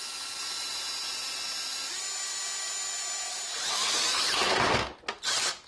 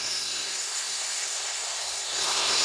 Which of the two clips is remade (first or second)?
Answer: second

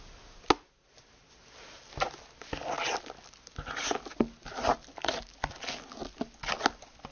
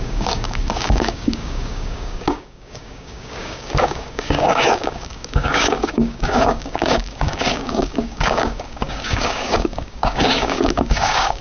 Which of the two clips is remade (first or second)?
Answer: second